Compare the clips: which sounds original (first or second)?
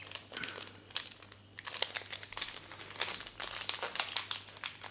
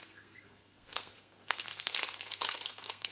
first